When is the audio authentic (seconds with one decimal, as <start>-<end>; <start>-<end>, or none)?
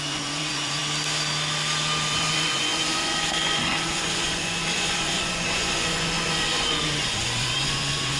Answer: 0.8-2.1